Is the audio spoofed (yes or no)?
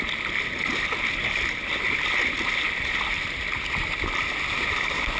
no